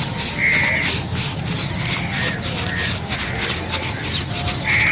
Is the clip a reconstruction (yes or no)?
no